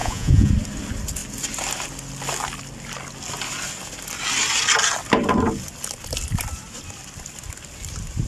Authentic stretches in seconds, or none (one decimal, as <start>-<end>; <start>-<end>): 0.5-8.3